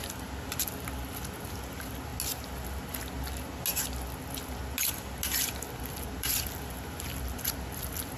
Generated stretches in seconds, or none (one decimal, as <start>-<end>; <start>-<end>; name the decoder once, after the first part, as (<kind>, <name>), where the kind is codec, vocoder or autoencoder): 1.7-2.1 (vocoder, BigVGAN v2); 5.8-8.2